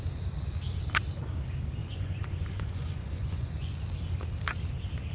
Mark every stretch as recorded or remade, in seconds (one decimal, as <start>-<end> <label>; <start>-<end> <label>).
0.0-1.8 recorded; 1.8-3.7 remade; 3.7-5.1 recorded